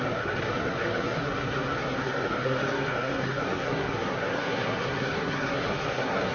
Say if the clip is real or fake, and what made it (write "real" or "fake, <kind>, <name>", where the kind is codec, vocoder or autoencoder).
fake, codec, SNAC